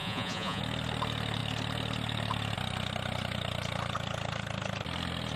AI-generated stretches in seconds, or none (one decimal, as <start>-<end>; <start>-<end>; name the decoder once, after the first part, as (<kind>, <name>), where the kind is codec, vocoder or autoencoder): 0.0-0.6 (vocoder, Vocos)